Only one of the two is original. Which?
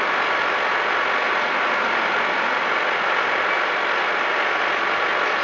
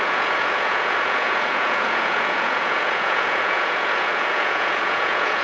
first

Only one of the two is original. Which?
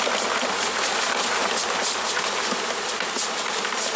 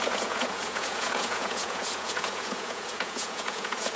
first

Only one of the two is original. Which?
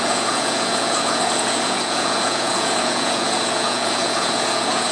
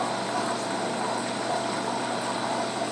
second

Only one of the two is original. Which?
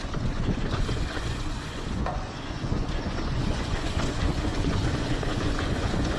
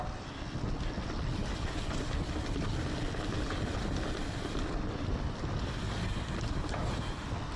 second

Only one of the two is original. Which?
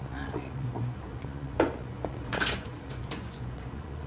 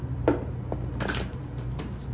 second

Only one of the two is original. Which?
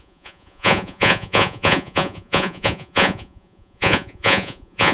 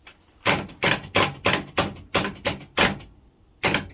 second